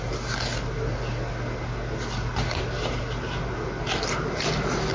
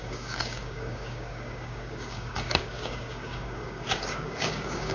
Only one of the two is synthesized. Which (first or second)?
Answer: second